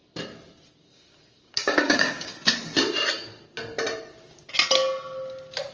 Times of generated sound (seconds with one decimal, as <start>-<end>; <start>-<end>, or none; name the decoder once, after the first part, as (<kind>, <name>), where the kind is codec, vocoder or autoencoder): 0.8-2.3 (codec, DAC)